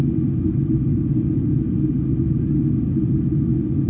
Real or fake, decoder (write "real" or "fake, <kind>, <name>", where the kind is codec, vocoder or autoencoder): real